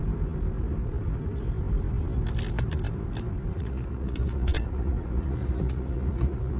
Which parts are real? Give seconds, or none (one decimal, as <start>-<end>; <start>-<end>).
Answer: 0.0-3.5